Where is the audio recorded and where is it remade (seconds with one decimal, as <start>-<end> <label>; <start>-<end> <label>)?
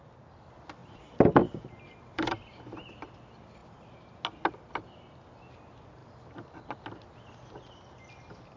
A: 0.0-0.8 recorded; 0.8-1.4 remade; 1.4-8.6 recorded